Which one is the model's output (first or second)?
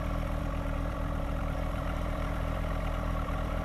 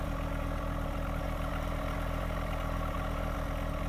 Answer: first